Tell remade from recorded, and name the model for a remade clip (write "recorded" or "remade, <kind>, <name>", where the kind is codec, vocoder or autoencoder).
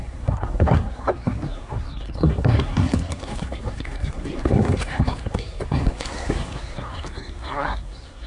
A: remade, codec, SNAC